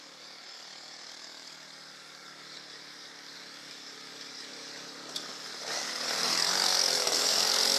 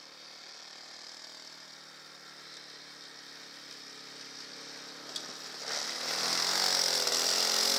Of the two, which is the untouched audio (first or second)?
second